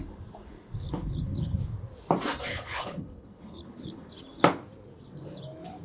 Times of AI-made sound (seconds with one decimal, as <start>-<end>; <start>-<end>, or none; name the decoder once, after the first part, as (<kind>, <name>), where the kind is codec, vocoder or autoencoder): 0.8-1.6 (codec, HILCodec); 2.5-4.1